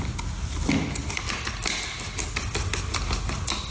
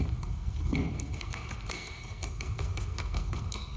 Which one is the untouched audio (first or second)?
first